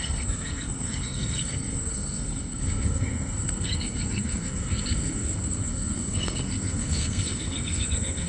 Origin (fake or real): fake